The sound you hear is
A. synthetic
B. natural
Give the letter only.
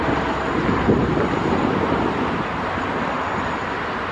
B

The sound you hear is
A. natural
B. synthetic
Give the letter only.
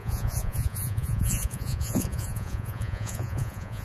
B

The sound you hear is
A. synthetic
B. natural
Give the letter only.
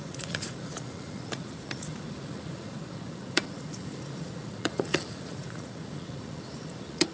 A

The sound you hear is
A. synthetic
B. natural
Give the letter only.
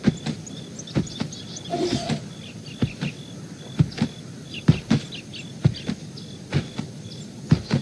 B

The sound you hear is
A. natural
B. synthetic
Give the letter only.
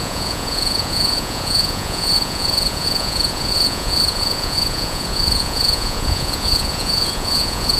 B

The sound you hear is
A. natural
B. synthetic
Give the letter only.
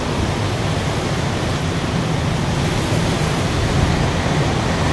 A